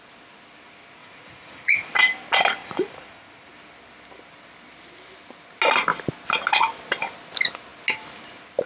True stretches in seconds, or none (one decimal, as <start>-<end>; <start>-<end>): 0.0-1.0; 1.9-2.6; 3.5-8.7